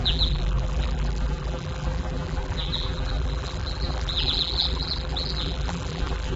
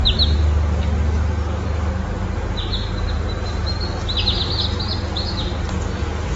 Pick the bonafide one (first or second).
second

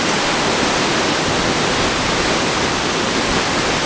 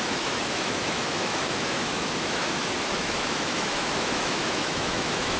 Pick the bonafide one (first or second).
first